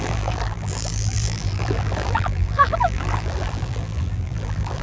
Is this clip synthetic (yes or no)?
yes